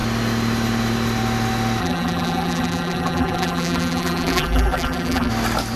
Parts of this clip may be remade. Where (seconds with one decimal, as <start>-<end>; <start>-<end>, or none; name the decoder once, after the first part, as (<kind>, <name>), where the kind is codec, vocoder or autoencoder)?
1.8-5.3 (vocoder, BigVGAN v2)